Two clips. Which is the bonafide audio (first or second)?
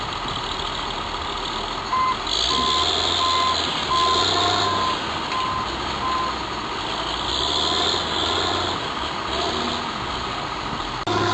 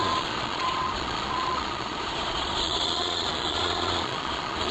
first